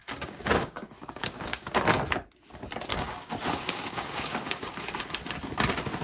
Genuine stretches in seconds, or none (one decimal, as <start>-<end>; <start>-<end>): 1.7-2.9; 5.0-6.0